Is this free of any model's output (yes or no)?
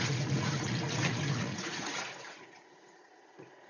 no